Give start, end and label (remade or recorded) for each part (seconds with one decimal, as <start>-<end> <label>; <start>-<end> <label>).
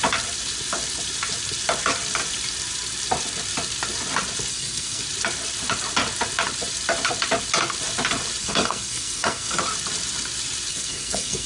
0.0-4.5 recorded; 4.5-5.0 remade; 5.0-8.4 recorded; 8.4-9.6 remade; 9.6-10.7 recorded; 10.7-11.5 remade